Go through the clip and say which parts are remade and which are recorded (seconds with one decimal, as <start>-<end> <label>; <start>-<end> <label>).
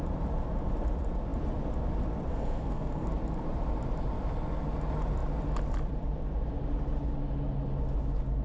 0.0-2.3 recorded; 2.3-3.1 remade; 3.1-8.4 recorded